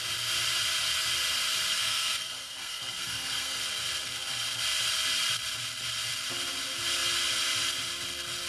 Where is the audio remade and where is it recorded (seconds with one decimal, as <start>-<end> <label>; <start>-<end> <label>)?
0.0-1.8 recorded; 1.8-3.6 remade; 3.6-8.5 recorded

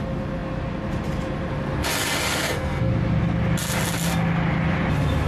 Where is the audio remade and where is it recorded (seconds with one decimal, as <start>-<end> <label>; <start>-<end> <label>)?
0.0-2.3 recorded; 2.3-2.9 remade; 2.9-5.3 recorded

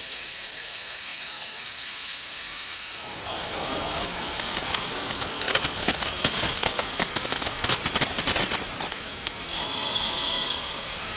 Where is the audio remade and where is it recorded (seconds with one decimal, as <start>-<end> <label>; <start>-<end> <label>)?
0.0-7.8 remade; 7.8-8.9 recorded; 8.9-11.2 remade

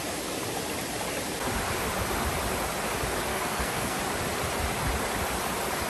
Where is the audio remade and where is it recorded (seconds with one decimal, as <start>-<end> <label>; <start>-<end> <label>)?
0.0-3.3 recorded; 3.3-4.0 remade; 4.0-5.9 recorded

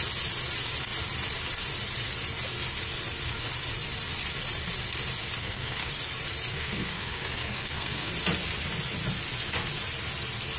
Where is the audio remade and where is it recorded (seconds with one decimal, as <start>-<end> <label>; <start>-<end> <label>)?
0.0-5.4 recorded; 5.4-5.9 remade; 5.9-6.5 recorded; 6.5-8.1 remade; 8.1-10.6 recorded

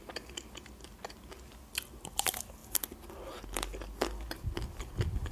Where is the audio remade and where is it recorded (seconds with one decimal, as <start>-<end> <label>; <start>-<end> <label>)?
0.0-5.3 recorded

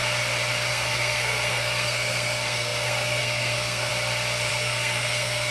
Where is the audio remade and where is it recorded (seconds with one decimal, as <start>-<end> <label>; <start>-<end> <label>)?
0.0-0.7 recorded; 0.7-3.9 remade; 3.9-4.5 recorded; 4.5-5.5 remade

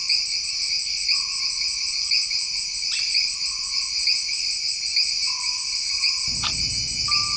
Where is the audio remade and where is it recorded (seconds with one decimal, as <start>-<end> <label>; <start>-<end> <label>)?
0.0-7.4 recorded